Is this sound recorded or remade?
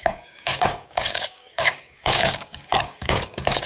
remade